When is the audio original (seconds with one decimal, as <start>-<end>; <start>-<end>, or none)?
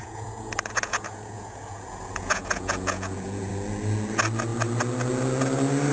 3.5-5.9